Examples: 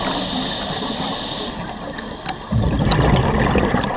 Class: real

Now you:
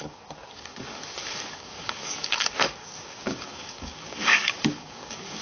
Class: fake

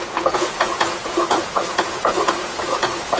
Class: fake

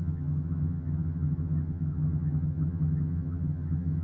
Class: fake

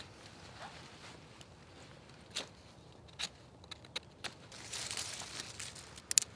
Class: real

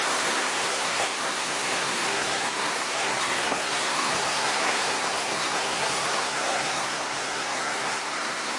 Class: fake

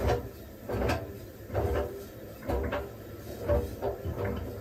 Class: real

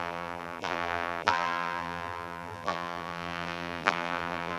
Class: fake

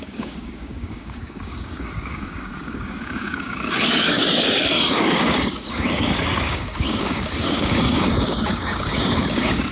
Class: fake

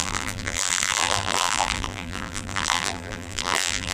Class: fake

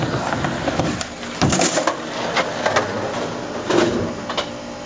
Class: real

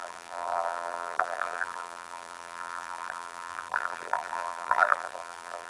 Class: fake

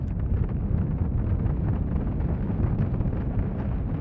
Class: real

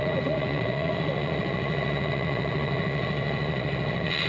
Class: fake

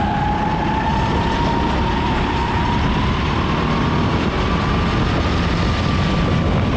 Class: real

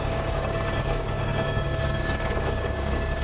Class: fake